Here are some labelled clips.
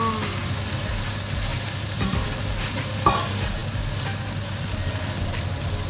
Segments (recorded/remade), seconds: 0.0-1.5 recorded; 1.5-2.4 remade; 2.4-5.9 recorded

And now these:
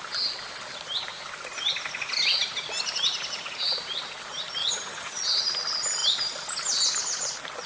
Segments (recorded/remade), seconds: 0.0-4.6 recorded; 4.6-5.2 remade; 5.2-7.7 recorded

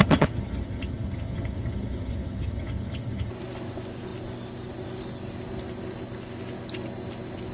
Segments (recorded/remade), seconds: 0.0-3.3 remade; 3.3-7.5 recorded

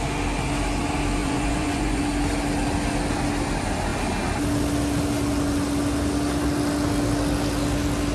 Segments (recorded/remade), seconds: 0.0-1.2 recorded; 1.2-2.0 remade; 2.0-8.1 recorded

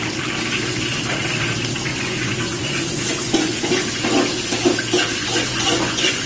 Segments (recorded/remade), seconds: 0.0-1.9 recorded; 1.9-3.7 remade; 3.7-5.2 recorded; 5.2-6.3 remade

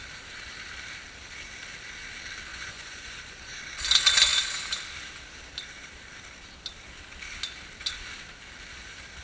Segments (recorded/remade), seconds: 0.0-2.5 recorded; 2.5-3.6 remade; 3.6-9.2 recorded

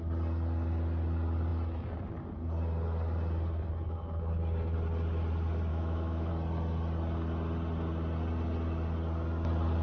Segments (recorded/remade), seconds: 0.0-5.7 recorded; 5.7-6.3 remade; 6.3-9.8 recorded